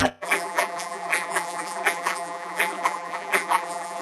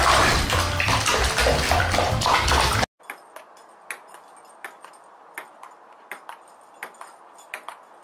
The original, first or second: second